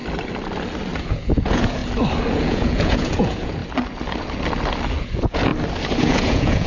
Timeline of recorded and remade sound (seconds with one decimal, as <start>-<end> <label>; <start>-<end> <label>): 0.0-1.0 recorded; 1.0-1.8 remade; 1.8-2.3 recorded; 2.3-3.6 remade; 3.6-5.0 recorded; 5.0-5.5 remade; 5.5-6.0 recorded; 6.0-6.7 remade